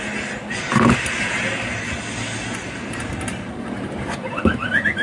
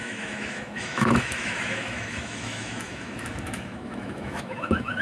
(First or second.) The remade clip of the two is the second